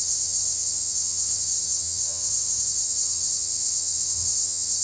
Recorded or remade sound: remade